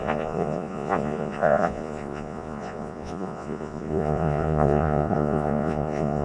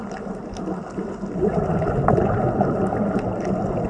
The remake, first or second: first